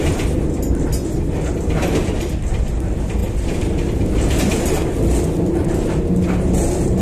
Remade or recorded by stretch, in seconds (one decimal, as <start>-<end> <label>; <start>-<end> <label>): 0.0-7.0 recorded